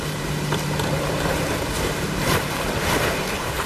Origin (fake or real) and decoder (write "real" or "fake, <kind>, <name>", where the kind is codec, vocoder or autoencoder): fake, vocoder, BigVGAN v2